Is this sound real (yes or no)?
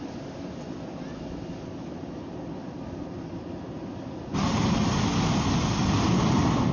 yes